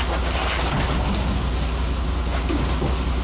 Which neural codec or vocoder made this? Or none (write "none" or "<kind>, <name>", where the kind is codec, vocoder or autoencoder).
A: none